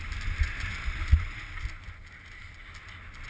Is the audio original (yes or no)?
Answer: yes